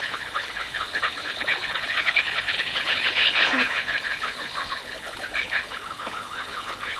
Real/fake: fake